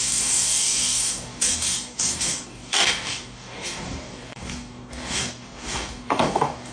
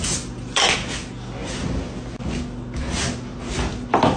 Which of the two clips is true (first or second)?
second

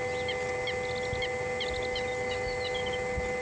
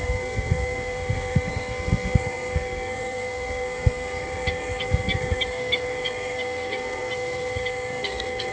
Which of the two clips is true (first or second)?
first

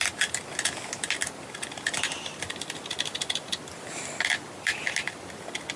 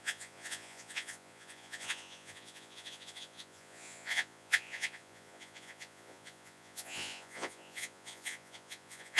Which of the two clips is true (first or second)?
first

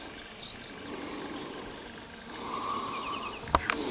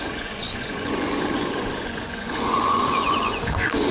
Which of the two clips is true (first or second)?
first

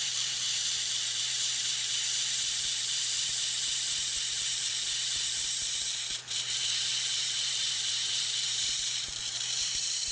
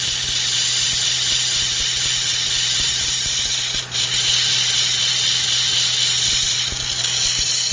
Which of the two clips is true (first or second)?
second